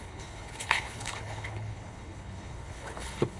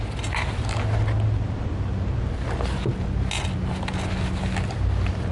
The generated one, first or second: first